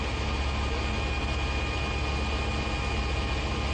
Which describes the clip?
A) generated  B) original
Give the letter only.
B